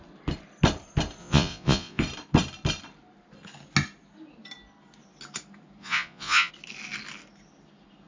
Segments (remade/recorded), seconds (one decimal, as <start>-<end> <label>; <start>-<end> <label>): 0.0-1.2 recorded; 1.2-2.0 remade; 2.0-5.8 recorded; 5.8-6.5 remade; 6.5-8.1 recorded